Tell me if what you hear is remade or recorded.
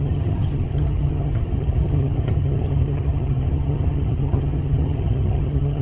remade